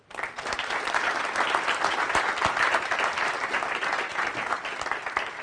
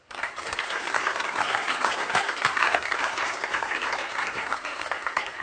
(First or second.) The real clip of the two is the first